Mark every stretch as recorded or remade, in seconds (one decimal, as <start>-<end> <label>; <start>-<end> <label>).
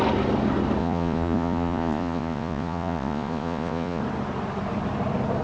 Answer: 0.0-0.8 recorded; 0.8-4.0 remade; 4.0-5.4 recorded